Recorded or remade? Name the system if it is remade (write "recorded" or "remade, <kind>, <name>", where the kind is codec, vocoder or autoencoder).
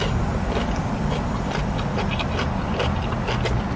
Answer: recorded